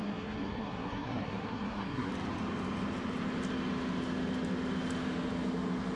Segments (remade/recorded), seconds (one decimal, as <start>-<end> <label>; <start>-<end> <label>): 0.0-2.1 remade; 2.1-6.0 recorded